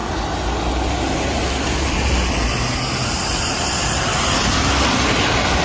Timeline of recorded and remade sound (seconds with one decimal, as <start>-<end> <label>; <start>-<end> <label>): 0.0-5.6 recorded